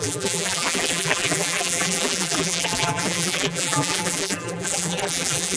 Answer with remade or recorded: remade